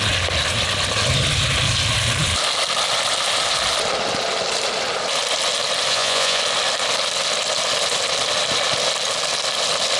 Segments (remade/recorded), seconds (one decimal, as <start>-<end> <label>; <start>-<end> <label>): 0.0-5.9 recorded; 5.9-6.4 remade; 6.4-10.0 recorded

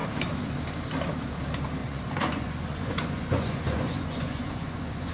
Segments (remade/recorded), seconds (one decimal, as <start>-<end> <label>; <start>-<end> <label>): 0.0-1.8 recorded; 1.8-5.1 remade

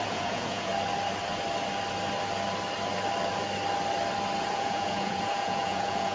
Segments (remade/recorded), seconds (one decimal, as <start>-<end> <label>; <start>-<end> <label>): 0.0-0.7 remade; 0.7-4.4 recorded; 4.4-6.1 remade

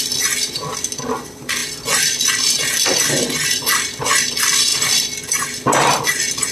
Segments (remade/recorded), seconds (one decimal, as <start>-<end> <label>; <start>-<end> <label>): 0.0-6.5 recorded

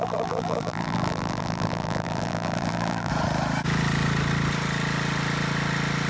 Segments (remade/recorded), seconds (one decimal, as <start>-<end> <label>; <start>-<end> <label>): 0.0-3.1 remade; 3.1-6.1 recorded

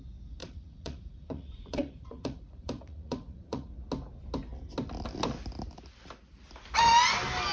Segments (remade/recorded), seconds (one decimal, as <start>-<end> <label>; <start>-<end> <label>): 0.0-0.4 recorded; 0.4-3.7 remade; 3.7-7.5 recorded